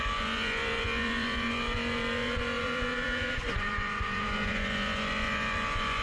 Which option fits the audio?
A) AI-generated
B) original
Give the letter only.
A